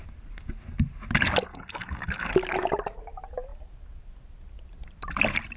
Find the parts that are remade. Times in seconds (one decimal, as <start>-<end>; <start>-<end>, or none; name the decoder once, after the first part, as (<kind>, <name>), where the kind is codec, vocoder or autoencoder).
1.5-2.3 (codec, DAC)